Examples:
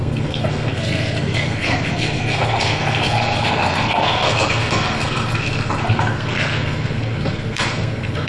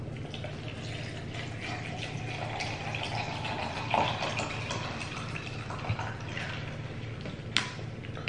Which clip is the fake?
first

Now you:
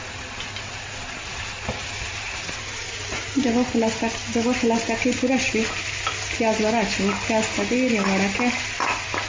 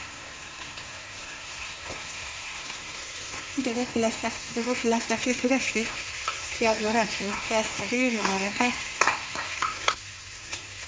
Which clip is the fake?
second